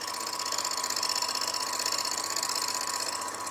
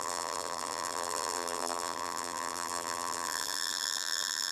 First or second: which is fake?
second